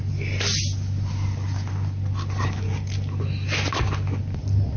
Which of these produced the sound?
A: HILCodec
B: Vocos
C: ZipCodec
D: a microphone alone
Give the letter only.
D